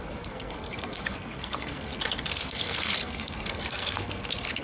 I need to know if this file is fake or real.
fake